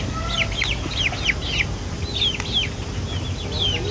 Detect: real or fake real